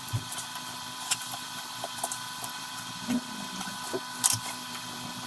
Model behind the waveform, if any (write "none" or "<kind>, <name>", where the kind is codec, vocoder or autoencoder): vocoder, BigVGAN v2